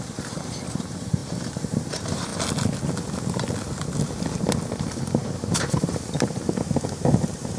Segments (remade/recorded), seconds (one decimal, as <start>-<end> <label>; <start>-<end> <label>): 0.0-2.3 remade; 2.3-4.8 recorded; 4.8-6.4 remade; 6.4-6.9 recorded; 6.9-7.6 remade